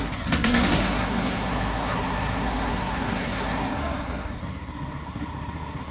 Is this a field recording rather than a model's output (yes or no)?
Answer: no